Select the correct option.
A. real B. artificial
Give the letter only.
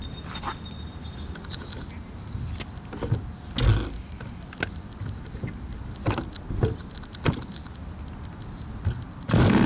A